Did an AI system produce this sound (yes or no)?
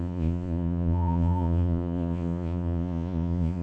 yes